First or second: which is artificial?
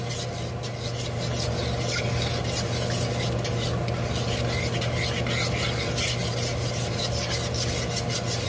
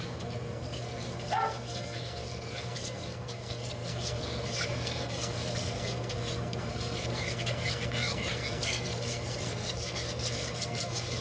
second